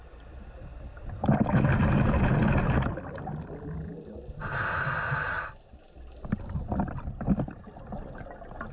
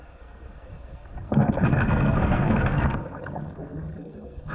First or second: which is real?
first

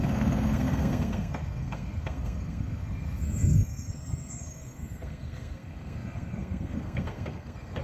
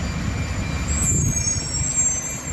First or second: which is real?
second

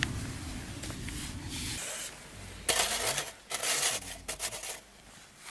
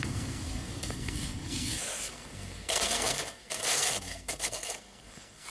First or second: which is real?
first